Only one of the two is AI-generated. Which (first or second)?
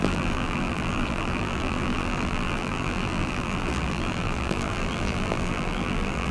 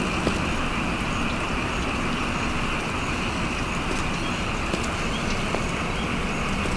first